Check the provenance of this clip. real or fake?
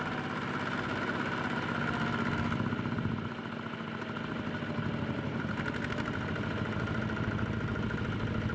real